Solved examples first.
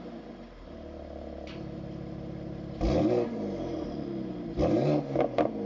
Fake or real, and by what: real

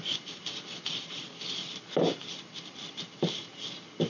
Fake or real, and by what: real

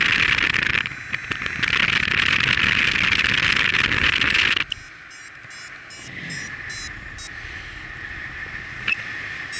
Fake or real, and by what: real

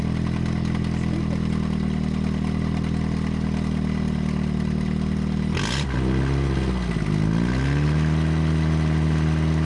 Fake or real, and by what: real